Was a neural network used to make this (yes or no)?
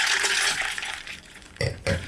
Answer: yes